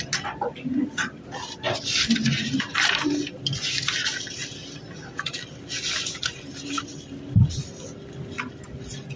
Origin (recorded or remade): recorded